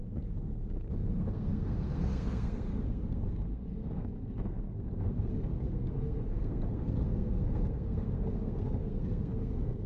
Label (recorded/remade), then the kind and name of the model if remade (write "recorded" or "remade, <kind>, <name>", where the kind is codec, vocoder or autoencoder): remade, codec, SNAC